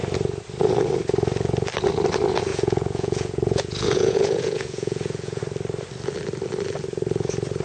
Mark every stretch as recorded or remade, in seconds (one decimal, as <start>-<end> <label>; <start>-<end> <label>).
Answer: 0.0-2.5 recorded; 2.5-5.4 remade; 5.4-7.6 recorded